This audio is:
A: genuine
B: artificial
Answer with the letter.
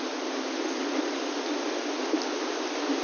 A